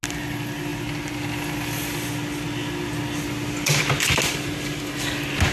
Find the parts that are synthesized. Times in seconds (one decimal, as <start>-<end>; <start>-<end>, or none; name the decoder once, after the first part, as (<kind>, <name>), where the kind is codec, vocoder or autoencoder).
none